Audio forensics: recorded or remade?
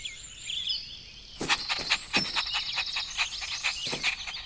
recorded